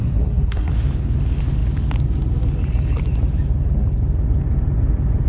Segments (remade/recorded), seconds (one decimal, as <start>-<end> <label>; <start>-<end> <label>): 0.0-0.7 remade; 0.7-5.3 recorded